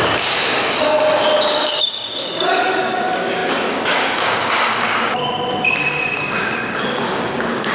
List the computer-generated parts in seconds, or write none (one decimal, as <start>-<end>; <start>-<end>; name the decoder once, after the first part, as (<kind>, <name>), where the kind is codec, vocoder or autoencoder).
0.0-5.1 (codec, DAC); 5.8-7.7